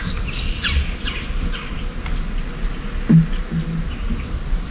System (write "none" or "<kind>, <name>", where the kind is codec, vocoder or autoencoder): none